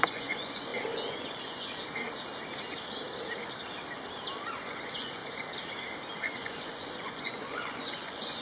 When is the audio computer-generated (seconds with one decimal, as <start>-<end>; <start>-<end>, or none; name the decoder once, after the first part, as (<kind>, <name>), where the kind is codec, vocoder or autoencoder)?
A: 0.0-1.8 (vocoder, Vocos); 4.6-5.2; 6.2-8.4